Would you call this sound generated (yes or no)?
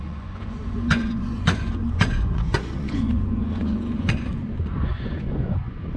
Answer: yes